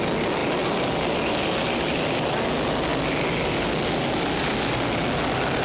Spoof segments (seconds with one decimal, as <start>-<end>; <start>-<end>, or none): 0.4-1.0

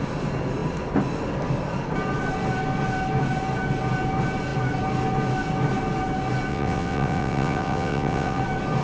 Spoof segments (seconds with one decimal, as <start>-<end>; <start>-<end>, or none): 6.5-8.4

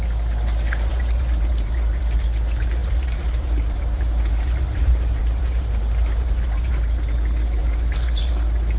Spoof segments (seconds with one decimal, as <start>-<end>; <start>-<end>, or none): 0.9-2.0; 2.8-6.7; 7.6-8.3

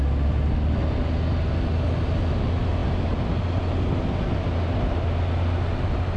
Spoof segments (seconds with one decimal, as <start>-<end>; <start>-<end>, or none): none

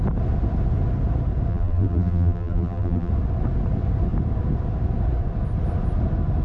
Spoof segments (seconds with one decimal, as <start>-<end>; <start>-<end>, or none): 1.5-3.1